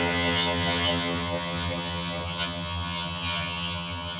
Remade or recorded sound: remade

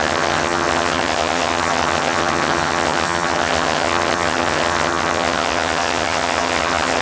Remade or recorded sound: remade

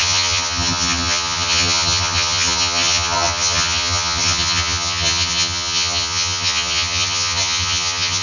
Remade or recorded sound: remade